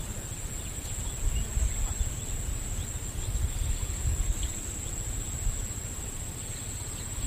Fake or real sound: real